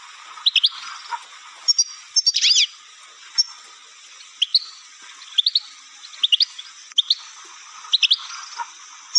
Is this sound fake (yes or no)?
no